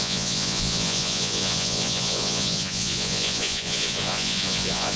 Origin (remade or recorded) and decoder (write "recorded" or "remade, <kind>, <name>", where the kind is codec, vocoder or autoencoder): remade, vocoder, Vocos